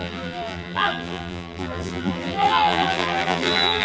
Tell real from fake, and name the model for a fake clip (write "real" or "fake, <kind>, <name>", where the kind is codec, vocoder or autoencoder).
fake, vocoder, BigVGAN v2